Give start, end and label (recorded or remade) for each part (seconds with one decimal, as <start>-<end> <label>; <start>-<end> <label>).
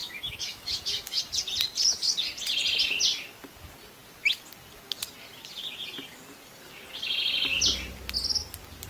0.0-1.2 remade; 1.2-8.9 recorded